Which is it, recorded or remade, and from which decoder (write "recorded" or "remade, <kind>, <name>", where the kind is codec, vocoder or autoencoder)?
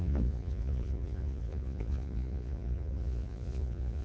remade, vocoder, Vocos